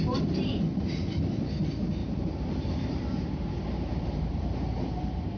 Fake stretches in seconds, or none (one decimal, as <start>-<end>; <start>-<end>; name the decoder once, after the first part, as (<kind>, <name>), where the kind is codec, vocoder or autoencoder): 2.0-5.4 (vocoder, BigVGAN v2)